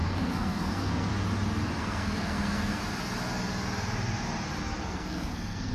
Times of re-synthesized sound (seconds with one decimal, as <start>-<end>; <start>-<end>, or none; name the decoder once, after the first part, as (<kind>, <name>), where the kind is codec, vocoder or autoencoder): 0.0-1.1 (codec, SNAC); 1.8-2.8; 4.8-5.7